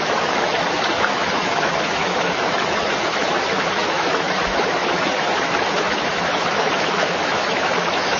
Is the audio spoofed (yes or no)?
yes